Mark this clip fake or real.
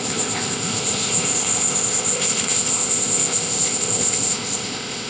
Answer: fake